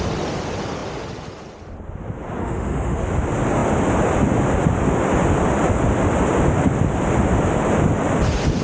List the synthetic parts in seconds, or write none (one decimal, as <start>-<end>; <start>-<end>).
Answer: 2.4-3.0

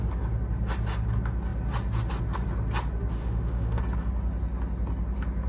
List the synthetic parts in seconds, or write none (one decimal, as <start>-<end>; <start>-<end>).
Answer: 3.2-3.8

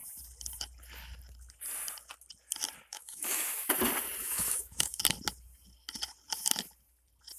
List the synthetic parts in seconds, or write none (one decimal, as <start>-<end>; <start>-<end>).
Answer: 2.9-3.7; 4.2-5.0

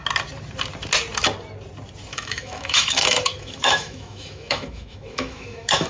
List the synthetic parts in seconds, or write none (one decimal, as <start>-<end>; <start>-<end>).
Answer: 2.1-5.9

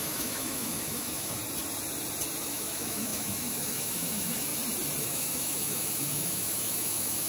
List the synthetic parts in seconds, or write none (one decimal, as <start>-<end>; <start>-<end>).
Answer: 0.0-1.4; 2.4-4.5; 5.0-7.3

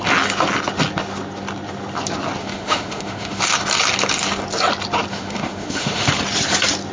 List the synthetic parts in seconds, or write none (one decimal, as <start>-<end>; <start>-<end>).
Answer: 2.4-3.4; 5.1-6.1

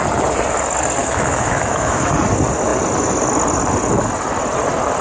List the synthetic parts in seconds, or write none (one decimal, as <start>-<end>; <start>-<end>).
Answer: 1.0-2.1